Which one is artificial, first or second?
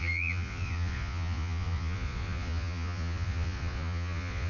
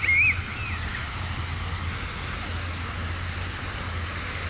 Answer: first